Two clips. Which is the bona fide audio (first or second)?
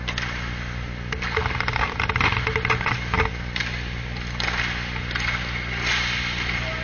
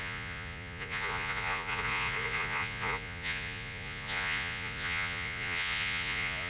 first